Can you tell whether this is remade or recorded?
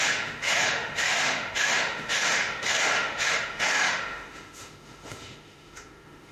remade